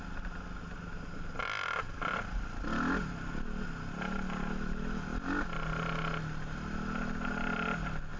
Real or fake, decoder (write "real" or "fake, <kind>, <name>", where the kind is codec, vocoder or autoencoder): real